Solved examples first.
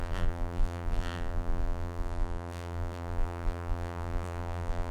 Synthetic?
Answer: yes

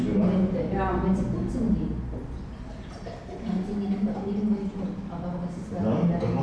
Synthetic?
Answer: no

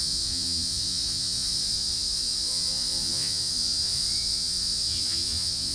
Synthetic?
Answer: yes